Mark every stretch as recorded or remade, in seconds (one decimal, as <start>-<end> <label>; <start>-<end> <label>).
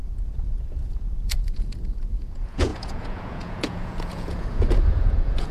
0.0-5.5 remade